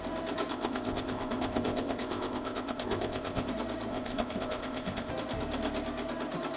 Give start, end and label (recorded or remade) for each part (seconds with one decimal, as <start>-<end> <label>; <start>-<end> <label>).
0.0-0.5 recorded; 0.5-3.5 remade; 3.5-3.9 recorded; 3.9-5.1 remade; 5.1-6.6 recorded